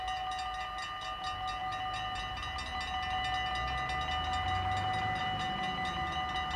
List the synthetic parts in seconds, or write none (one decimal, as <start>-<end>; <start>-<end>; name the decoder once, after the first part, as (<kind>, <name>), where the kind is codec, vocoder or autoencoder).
none